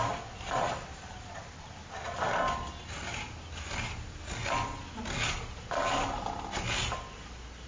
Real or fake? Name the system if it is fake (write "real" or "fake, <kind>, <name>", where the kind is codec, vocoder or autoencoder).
real